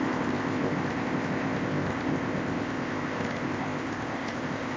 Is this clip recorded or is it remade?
remade